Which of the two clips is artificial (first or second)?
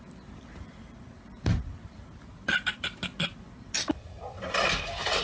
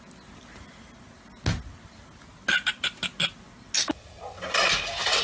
first